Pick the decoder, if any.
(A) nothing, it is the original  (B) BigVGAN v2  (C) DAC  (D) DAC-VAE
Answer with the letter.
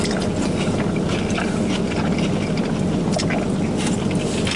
A